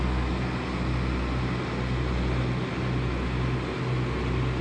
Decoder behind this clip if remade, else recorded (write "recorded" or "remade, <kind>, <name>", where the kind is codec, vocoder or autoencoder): recorded